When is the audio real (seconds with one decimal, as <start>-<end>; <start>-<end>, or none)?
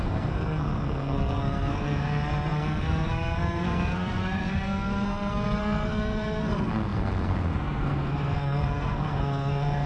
none